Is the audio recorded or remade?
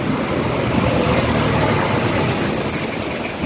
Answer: recorded